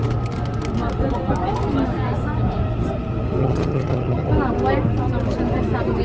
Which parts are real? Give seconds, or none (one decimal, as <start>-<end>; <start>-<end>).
0.0-3.4; 4.3-6.0